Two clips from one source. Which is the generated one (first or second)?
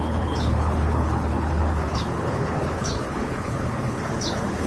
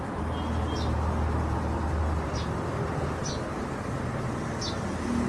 first